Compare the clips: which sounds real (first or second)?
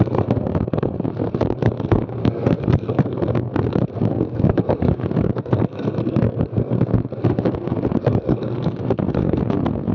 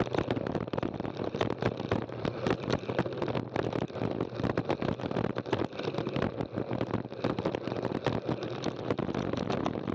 second